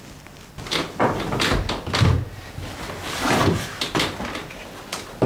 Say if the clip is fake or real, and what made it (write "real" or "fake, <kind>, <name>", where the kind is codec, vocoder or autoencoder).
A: real